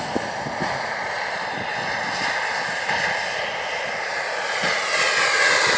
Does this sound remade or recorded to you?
recorded